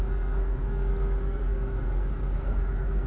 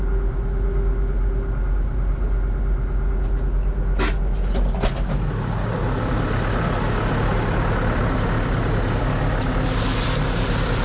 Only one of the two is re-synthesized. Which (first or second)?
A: first